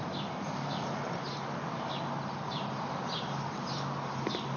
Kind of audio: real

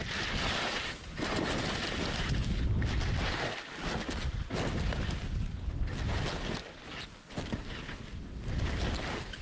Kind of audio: real